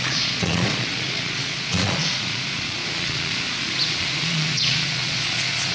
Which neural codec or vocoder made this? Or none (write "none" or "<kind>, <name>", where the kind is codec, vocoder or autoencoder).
vocoder, Vocos